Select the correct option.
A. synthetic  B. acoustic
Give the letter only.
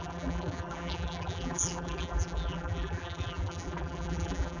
A